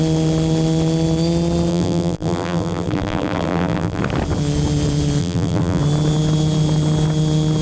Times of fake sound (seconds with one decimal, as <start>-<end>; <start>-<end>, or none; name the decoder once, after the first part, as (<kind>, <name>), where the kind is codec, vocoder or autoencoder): 1.7-4.0 (vocoder, BigVGAN v2); 5.2-5.8